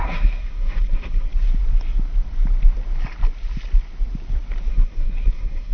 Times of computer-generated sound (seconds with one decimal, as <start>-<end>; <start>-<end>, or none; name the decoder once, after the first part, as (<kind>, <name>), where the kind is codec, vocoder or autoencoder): 0.0-1.3 (codec, SNAC); 4.7-5.7